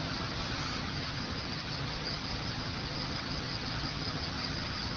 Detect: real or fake fake